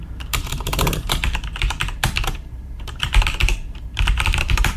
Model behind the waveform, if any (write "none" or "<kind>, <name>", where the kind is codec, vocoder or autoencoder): vocoder, BigVGAN v2